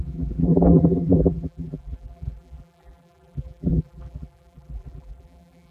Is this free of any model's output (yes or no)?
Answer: no